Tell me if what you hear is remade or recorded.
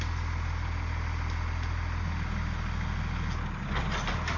recorded